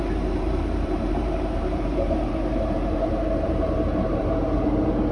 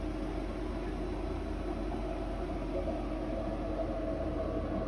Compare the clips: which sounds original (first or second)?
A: second